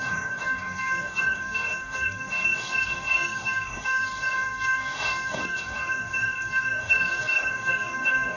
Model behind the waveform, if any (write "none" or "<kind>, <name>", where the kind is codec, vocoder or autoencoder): codec, DAC